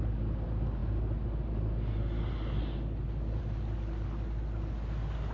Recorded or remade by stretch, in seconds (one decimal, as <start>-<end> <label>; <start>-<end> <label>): 0.0-5.3 recorded

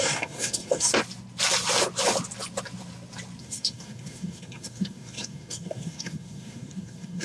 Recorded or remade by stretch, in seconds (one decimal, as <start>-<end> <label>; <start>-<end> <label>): 0.0-0.9 remade; 0.9-3.4 recorded; 3.4-7.2 remade

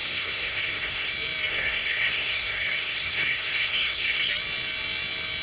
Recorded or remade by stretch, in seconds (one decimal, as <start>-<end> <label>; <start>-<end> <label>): 0.0-1.1 remade; 1.1-1.5 recorded; 1.5-4.3 remade; 4.3-5.4 recorded

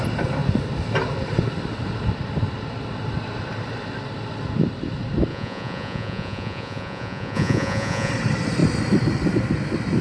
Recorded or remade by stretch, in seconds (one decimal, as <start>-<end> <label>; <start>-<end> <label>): 0.0-5.3 recorded; 5.3-8.1 remade; 8.1-10.0 recorded

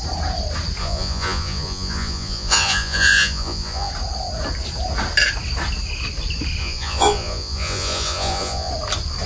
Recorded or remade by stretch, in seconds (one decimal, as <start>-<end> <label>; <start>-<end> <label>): 0.0-0.8 recorded; 0.8-3.9 remade; 3.9-6.6 recorded; 6.6-8.7 remade; 8.7-9.3 recorded

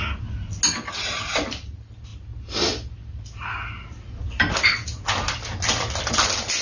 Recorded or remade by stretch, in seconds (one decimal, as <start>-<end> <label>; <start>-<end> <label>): 0.0-6.6 recorded

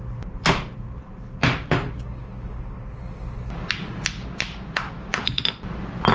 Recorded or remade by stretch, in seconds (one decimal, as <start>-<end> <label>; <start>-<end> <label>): 0.0-6.1 recorded